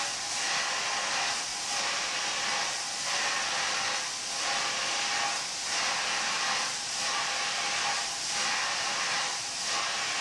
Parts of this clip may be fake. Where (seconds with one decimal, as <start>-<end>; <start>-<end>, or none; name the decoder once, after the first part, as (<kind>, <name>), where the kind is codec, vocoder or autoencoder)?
none